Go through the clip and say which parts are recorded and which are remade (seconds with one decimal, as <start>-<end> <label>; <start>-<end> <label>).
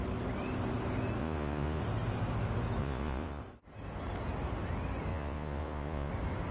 0.0-1.2 recorded; 1.2-1.8 remade; 1.8-2.8 recorded; 2.8-3.4 remade; 3.4-5.1 recorded; 5.1-6.1 remade; 6.1-6.5 recorded